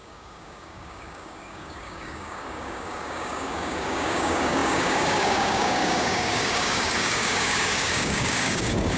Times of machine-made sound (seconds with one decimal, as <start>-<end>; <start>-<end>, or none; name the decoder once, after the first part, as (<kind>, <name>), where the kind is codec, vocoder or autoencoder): 0.0-9.0 (codec, DAC)